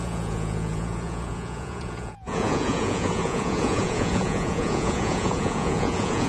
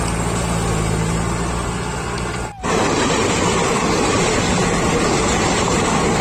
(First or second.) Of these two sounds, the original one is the second